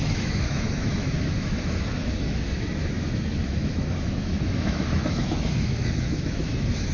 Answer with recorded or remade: remade